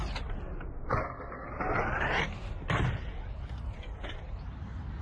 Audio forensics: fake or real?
real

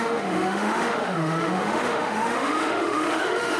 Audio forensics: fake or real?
fake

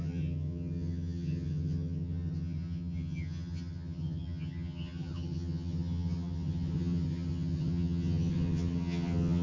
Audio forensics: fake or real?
fake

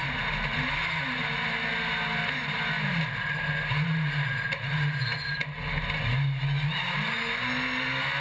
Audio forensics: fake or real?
real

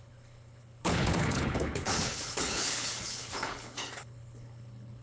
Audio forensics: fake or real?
fake